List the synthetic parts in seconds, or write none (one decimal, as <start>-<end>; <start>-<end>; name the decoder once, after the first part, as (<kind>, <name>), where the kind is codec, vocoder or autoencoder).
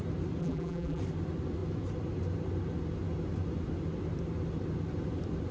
0.4-1.0 (vocoder, BigVGAN v2)